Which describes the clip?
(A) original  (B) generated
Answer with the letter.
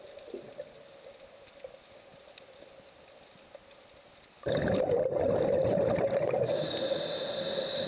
A